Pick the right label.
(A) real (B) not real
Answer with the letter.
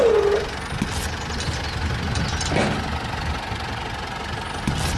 A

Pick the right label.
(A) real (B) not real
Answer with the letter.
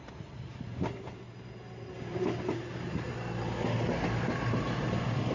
A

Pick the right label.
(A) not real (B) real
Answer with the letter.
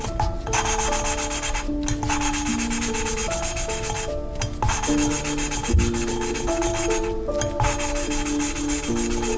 B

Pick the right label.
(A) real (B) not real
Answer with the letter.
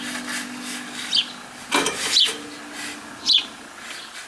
A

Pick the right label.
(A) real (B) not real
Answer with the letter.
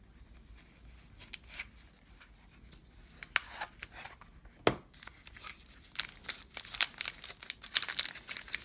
A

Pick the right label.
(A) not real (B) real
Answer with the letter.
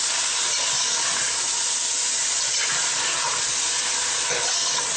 B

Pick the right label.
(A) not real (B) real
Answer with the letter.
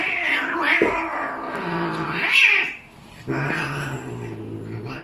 A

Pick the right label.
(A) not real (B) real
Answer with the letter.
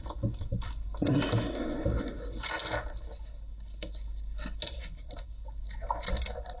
B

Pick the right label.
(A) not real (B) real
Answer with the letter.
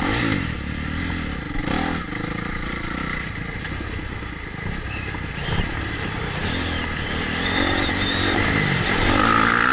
B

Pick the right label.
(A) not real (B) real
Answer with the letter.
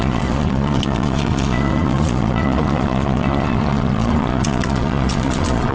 A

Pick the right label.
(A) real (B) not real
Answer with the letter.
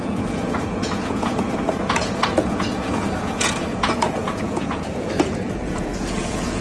B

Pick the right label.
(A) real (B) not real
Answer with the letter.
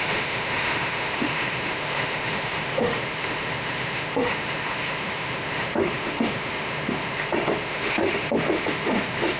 B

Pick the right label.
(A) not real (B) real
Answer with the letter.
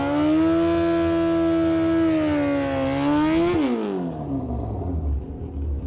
B